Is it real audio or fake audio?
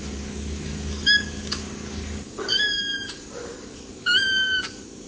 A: fake